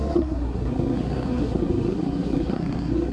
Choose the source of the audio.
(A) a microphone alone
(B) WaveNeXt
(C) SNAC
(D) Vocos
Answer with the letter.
C